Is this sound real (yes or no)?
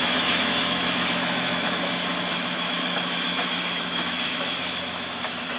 no